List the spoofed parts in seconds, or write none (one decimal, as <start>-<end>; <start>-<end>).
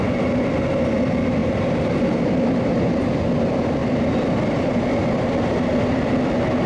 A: 3.8-4.6; 5.0-6.0